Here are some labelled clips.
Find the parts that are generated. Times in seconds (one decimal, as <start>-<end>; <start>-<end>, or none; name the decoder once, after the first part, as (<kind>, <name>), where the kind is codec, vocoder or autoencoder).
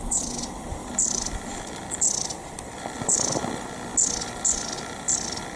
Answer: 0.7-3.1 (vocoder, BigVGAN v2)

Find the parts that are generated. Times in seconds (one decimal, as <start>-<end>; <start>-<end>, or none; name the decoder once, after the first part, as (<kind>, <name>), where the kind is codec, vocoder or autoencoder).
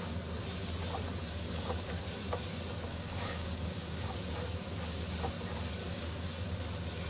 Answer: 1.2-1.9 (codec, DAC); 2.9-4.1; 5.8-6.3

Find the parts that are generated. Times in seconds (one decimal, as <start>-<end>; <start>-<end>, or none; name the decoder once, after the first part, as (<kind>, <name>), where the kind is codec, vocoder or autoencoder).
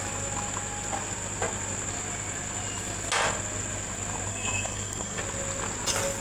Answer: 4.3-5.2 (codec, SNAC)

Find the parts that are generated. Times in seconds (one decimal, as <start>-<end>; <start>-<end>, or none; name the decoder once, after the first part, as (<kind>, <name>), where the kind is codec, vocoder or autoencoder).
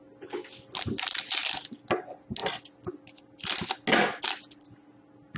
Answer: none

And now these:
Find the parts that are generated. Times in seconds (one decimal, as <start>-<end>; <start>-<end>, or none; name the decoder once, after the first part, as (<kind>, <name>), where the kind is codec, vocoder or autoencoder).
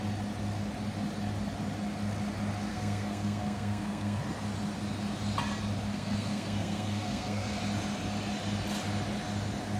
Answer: 2.7-4.2 (codec, SNAC); 5.9-7.6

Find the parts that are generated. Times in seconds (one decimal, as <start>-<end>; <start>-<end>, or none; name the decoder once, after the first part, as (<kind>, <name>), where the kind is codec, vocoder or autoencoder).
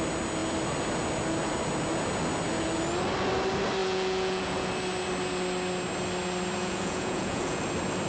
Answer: 3.8-4.7 (vocoder, Vocos); 6.6-7.6